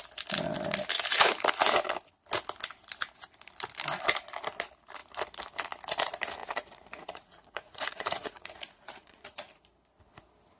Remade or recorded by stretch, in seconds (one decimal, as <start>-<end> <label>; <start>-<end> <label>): 0.0-6.4 recorded; 6.4-9.6 remade; 9.6-10.6 recorded